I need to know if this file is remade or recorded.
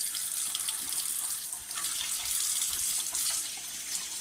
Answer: recorded